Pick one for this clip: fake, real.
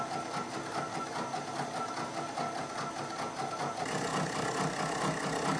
real